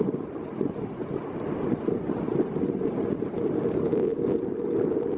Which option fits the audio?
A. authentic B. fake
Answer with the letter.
A